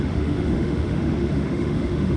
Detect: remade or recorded remade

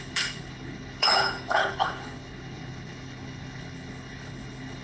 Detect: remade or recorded remade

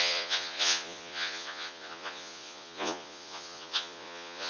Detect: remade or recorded remade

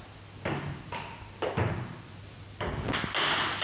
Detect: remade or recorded recorded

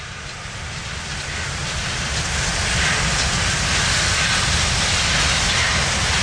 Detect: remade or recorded recorded